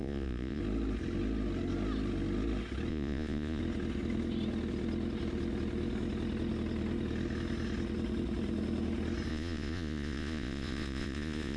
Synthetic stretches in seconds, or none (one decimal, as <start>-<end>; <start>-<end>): 0.0-0.6; 2.9-3.6; 9.3-11.6